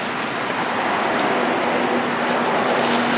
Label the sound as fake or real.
real